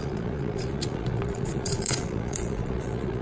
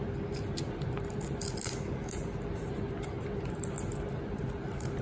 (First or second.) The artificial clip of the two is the first